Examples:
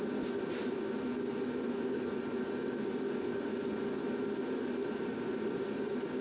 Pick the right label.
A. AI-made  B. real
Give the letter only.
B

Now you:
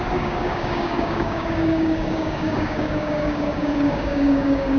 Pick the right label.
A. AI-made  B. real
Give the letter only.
A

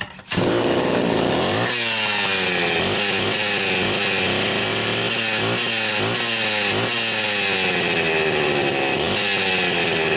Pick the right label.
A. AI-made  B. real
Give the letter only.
B